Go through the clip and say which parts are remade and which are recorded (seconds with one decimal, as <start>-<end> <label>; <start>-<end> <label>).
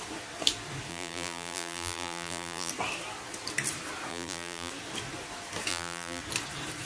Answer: 0.0-0.9 recorded; 0.9-2.7 remade; 2.7-4.1 recorded; 4.1-4.7 remade; 4.7-5.7 recorded; 5.7-6.2 remade; 6.2-6.9 recorded